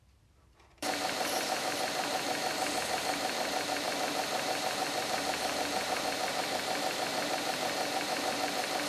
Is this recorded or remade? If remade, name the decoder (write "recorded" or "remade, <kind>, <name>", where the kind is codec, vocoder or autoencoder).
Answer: remade, vocoder, BigVGAN v2